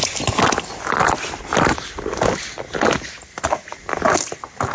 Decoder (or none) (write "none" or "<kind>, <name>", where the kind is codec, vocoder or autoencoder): none